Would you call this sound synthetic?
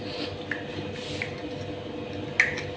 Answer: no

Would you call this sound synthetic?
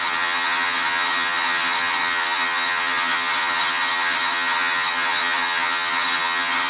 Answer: yes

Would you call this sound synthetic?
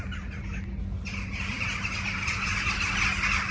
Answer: no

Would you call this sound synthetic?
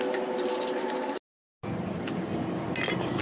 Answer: no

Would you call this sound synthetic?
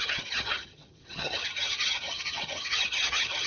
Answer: yes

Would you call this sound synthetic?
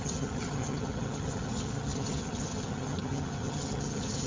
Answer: yes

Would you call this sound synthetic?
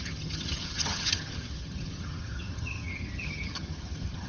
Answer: yes